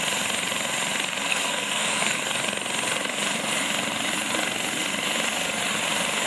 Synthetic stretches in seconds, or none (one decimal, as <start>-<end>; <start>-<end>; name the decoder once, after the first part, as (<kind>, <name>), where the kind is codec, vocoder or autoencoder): 1.3-2.2 (codec, SNAC)